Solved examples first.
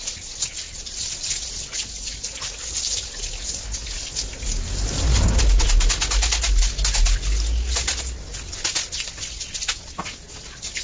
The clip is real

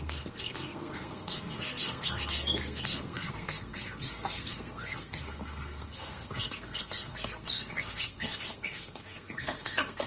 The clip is fake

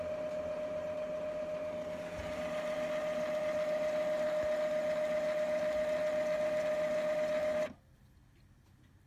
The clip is real